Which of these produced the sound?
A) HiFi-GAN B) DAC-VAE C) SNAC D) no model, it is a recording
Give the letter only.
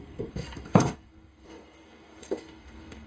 C